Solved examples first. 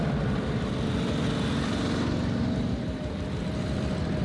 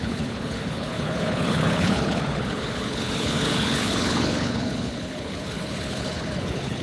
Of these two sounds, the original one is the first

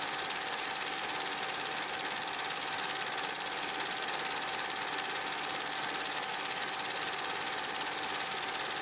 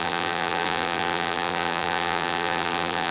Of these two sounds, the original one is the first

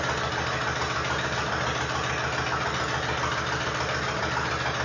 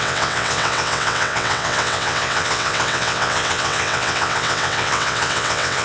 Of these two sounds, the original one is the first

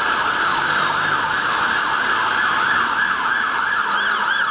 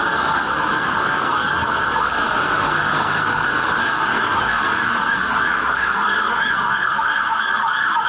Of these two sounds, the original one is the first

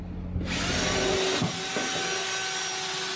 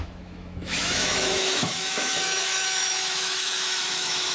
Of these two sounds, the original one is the first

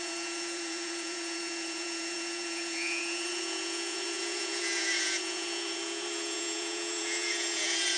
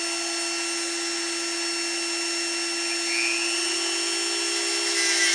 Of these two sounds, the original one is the second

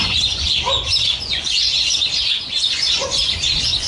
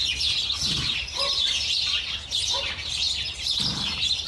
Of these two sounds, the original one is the second